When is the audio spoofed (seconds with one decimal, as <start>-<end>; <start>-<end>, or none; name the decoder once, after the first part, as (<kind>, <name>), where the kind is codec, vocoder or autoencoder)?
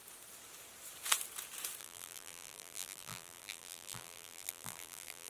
1.8-5.3 (vocoder, BigVGAN v2)